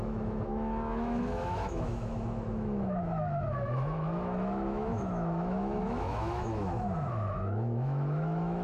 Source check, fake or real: fake